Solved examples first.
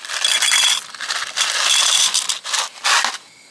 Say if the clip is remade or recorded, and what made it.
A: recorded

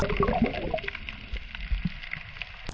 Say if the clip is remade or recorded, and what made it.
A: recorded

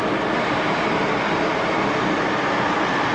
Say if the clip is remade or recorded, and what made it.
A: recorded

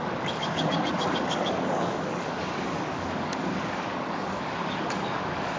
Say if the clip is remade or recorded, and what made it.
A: remade, codec, DAC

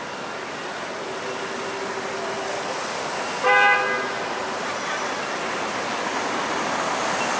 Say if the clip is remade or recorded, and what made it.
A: recorded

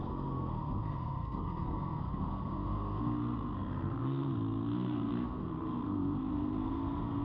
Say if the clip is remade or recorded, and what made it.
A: remade, codec, SNAC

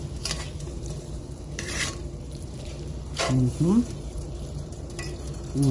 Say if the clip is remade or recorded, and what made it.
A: remade, vocoder, BigVGAN v2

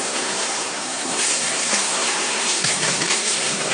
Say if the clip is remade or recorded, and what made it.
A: remade, codec, SNAC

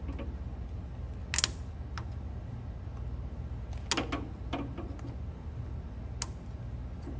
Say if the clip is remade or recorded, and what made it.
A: recorded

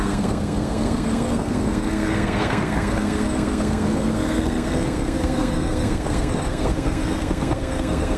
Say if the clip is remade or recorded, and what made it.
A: remade, codec, SNAC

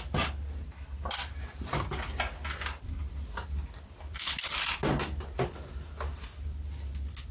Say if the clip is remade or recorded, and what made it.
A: recorded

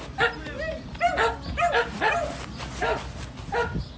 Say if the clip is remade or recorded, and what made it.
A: recorded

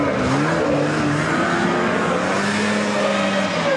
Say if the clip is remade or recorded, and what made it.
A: recorded